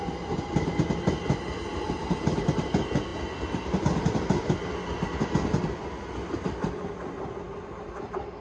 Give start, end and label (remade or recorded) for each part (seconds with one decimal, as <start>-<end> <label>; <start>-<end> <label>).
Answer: 0.0-8.4 recorded